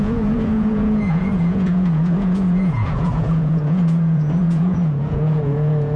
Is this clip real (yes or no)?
no